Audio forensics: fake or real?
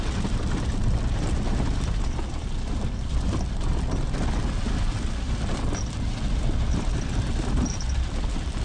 real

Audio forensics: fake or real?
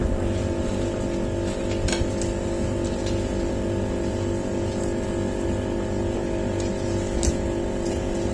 real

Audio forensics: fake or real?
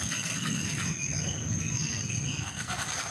fake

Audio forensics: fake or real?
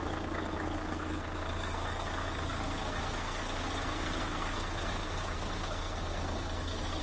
fake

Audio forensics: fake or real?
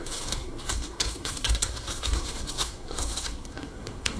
fake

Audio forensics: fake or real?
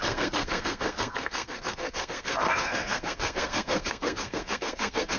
fake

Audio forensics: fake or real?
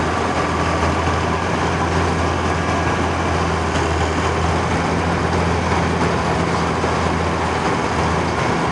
real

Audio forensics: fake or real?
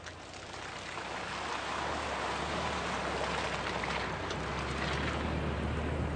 real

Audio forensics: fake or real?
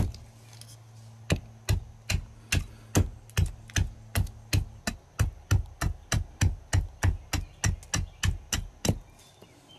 real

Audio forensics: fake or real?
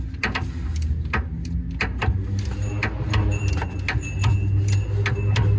real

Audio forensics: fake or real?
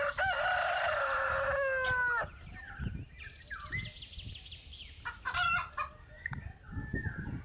real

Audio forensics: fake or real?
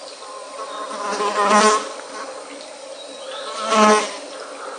real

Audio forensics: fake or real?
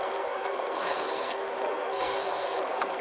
fake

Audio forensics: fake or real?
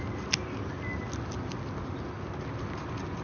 real